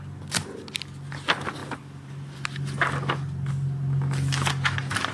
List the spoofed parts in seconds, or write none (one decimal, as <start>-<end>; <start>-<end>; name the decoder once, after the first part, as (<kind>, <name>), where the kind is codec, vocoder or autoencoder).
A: none